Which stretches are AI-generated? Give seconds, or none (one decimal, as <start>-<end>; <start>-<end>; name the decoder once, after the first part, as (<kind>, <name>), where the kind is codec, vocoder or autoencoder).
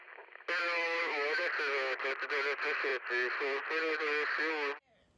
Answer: 0.6-1.4 (autoencoder, DAC-VAE)